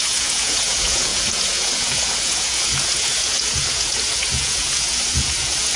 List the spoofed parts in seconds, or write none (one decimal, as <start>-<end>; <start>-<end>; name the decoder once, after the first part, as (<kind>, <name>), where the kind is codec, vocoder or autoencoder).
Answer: 0.0-5.8 (vocoder, Vocos)